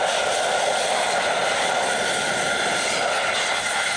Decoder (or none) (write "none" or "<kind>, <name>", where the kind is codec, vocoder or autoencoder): none